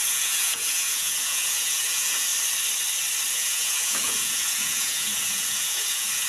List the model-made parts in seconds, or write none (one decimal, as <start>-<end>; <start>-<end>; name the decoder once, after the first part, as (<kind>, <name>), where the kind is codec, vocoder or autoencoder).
0.0-2.3 (vocoder, Vocos); 3.3-6.3